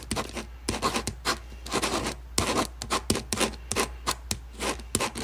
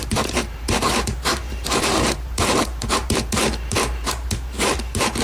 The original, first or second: first